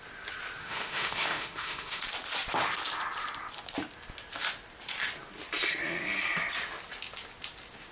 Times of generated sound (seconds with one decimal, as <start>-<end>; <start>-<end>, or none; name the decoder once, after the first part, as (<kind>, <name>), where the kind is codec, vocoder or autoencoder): 0.6-2.0 (autoencoder, DAC-VAE)